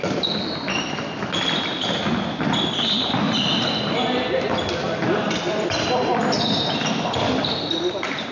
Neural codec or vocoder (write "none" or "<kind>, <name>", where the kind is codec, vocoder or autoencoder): none